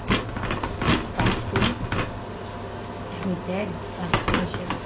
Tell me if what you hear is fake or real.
real